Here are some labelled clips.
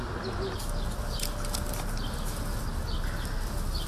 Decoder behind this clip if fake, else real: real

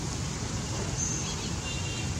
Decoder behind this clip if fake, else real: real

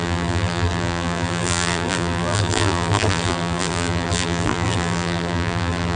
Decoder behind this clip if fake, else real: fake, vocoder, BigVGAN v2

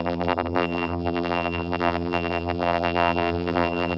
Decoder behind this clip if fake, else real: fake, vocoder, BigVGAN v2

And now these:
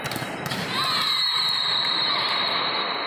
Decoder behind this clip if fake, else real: fake, vocoder, BigVGAN v2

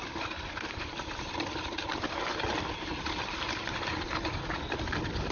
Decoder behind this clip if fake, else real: real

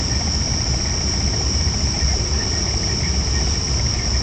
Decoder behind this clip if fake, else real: real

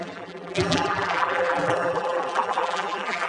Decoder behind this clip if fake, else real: fake, vocoder, BigVGAN v2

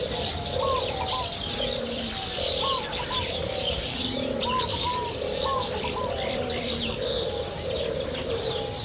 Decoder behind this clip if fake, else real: fake, vocoder, BigVGAN v2